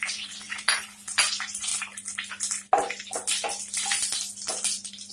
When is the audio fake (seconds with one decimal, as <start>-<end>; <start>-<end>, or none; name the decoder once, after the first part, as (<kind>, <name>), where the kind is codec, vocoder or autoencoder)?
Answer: 0.0-1.7 (vocoder, Vocos)